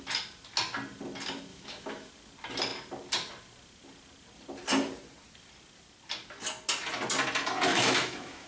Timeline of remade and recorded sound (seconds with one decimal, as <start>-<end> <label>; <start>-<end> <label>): 0.0-1.5 recorded; 1.5-2.1 remade; 2.1-7.7 recorded; 7.7-8.5 remade